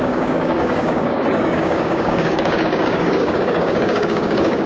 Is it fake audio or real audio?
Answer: fake